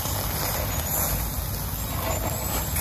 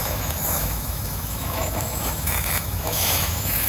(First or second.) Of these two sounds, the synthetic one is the second